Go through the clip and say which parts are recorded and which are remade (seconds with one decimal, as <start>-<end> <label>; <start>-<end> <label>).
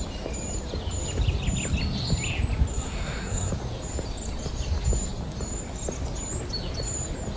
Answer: 0.0-2.7 recorded; 2.7-3.5 remade; 3.5-7.4 recorded